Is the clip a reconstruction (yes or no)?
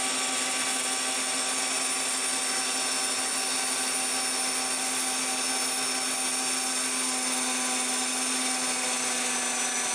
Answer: no